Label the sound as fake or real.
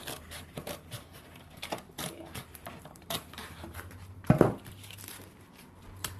fake